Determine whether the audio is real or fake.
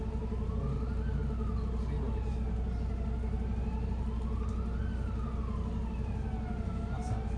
real